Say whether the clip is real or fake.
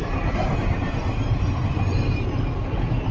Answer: fake